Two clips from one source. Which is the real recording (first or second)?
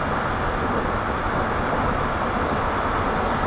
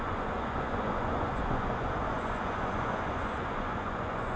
first